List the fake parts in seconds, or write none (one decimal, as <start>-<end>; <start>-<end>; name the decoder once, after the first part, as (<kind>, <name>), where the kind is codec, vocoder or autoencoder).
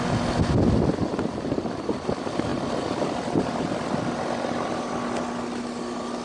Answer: none